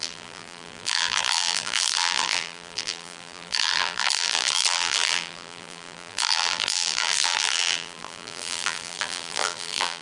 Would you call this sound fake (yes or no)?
yes